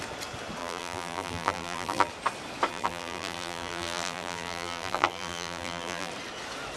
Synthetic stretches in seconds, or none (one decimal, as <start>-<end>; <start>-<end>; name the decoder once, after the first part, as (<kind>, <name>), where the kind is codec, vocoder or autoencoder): 0.6-2.1 (vocoder, BigVGAN v2); 2.7-6.1